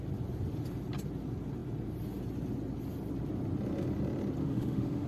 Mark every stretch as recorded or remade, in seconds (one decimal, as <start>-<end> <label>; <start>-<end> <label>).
0.0-4.4 recorded; 4.4-5.1 remade

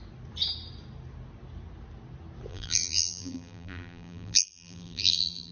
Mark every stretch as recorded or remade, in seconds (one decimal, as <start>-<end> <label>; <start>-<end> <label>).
0.0-2.5 recorded; 2.5-5.5 remade

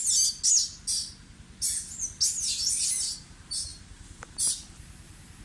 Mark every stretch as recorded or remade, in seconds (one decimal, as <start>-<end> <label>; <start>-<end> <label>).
0.0-3.2 recorded; 3.2-5.4 remade

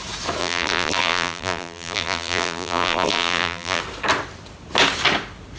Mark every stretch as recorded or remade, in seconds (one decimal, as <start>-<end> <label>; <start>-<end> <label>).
0.0-0.4 recorded; 0.4-3.8 remade; 3.8-5.6 recorded